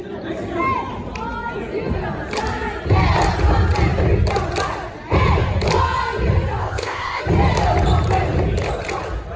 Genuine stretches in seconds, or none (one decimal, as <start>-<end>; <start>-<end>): 0.0-6.6; 7.2-9.4